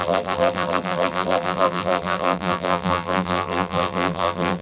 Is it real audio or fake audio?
fake